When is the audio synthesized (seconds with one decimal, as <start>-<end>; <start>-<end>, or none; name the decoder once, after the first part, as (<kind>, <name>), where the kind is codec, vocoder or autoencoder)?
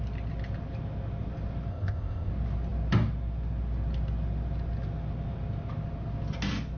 1.7-2.3 (codec, ZipCodec)